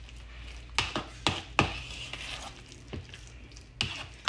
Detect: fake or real real